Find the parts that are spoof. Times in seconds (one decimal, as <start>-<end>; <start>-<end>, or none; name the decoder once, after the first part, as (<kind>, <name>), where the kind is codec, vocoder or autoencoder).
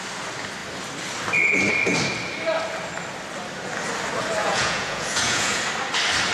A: 4.4-5.6 (vocoder, Vocos)